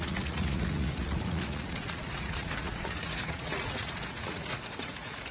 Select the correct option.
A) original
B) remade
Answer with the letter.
B